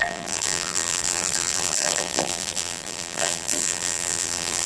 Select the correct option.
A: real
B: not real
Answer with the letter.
B